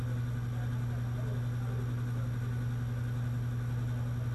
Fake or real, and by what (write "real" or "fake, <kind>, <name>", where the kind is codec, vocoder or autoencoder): real